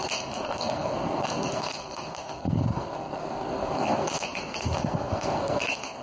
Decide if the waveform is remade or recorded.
remade